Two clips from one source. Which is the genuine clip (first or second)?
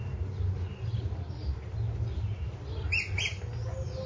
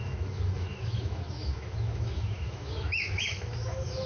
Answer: first